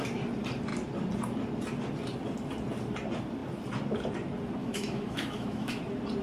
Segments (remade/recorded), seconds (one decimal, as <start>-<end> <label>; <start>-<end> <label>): 0.0-4.6 recorded; 4.6-5.8 remade; 5.8-6.2 recorded